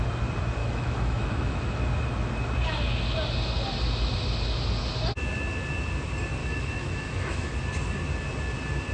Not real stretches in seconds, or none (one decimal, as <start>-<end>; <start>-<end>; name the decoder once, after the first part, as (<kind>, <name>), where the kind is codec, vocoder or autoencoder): 0.6-1.8 (autoencoder, DAC-VAE); 6.4-7.5